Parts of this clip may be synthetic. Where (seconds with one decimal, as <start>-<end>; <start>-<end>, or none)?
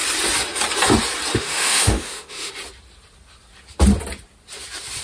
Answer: 1.3-2.5